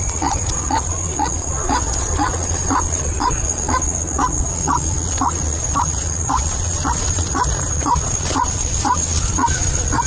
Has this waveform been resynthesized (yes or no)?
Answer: yes